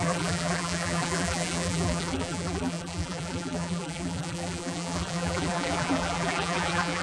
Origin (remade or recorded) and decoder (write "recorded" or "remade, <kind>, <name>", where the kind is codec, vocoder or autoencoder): remade, vocoder, BigVGAN v2